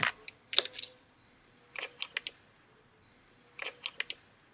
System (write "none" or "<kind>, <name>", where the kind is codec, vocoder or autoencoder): none